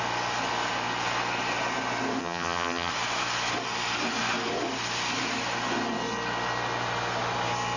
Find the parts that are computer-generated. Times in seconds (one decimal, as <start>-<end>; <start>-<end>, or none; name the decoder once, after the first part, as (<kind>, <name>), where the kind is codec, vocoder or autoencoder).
2.2-2.9 (vocoder, HiFi-GAN)